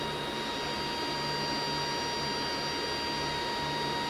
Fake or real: real